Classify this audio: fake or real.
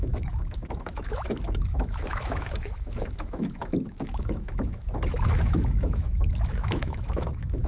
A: fake